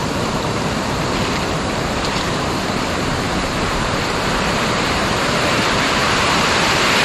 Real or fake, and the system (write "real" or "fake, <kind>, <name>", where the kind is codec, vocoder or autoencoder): fake, vocoder, BigVGAN v2